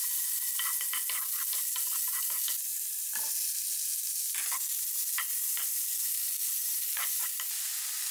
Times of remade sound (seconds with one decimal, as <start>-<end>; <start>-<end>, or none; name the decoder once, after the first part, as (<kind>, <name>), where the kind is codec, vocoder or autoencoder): 2.7-3.3 (vocoder, BigVGAN v2); 5.3-7.2